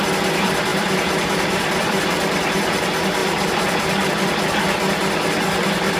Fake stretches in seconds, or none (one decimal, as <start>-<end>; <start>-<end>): 0.7-2.0; 3.2-4.1